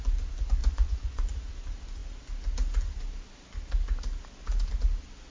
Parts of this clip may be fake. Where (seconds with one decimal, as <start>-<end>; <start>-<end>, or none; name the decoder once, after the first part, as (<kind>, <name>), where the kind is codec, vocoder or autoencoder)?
0.6-1.2 (vocoder, Vocos)